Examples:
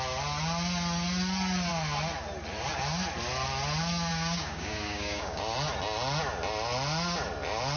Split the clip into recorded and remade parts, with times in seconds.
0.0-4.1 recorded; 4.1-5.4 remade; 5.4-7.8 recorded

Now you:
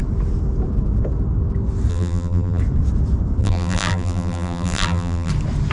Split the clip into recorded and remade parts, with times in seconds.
0.0-1.9 recorded; 1.9-2.6 remade; 2.6-3.4 recorded; 3.4-5.3 remade; 5.3-5.7 recorded